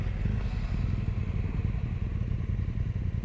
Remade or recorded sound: recorded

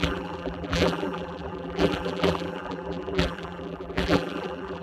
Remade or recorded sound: remade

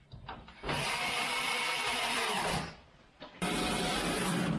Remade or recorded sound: remade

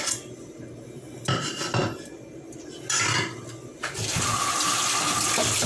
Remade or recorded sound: recorded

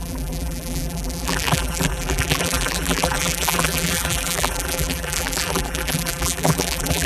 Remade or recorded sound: remade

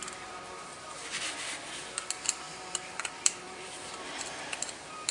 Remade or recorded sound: remade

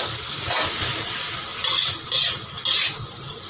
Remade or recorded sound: recorded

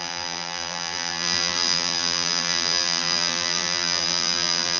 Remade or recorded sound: remade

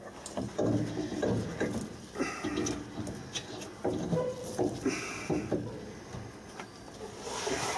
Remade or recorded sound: recorded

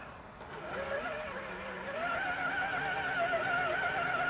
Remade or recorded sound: recorded